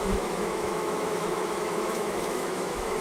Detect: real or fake fake